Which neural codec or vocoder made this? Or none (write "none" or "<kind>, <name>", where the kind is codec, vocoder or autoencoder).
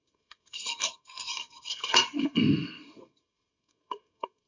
codec, SNAC